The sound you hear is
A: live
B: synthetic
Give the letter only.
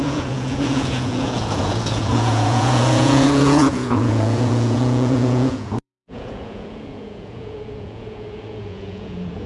B